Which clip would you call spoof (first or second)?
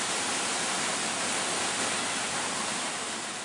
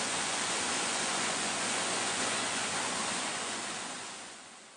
second